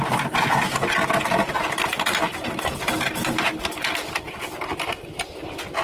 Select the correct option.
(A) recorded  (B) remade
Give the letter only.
A